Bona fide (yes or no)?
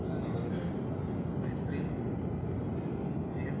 yes